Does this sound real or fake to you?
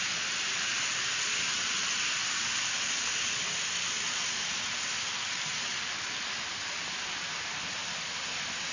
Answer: real